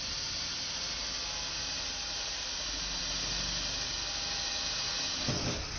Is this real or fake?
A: real